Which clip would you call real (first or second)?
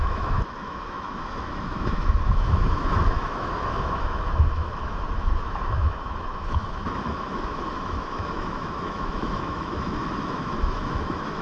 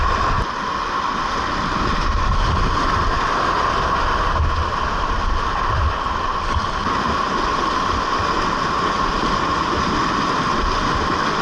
second